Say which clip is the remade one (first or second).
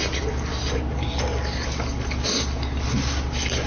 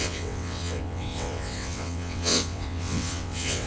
second